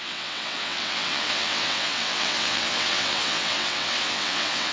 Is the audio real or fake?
fake